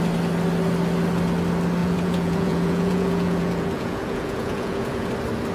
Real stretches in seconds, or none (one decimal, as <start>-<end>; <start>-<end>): 0.0-1.8; 5.1-5.5